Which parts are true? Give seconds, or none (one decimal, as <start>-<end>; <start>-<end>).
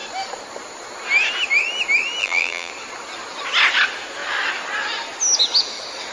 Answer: 0.0-2.2; 2.7-6.1